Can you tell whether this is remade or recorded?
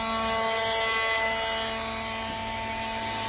recorded